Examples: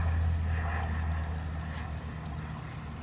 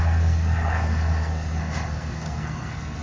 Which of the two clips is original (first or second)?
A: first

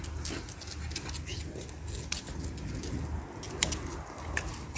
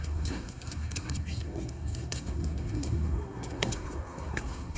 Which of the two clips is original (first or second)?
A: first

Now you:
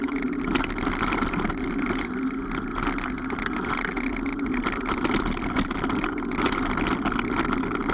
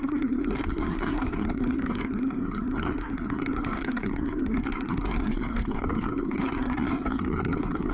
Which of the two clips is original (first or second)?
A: first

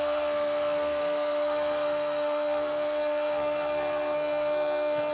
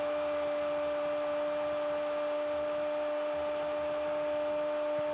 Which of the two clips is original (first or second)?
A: second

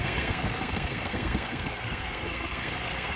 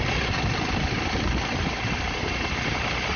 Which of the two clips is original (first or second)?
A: second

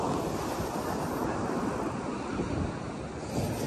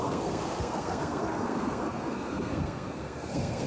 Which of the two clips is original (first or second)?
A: first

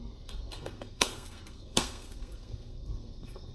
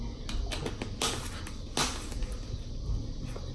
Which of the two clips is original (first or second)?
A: second